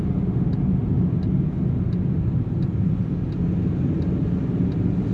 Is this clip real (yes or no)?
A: yes